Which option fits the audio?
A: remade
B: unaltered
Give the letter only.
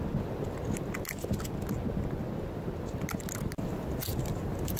B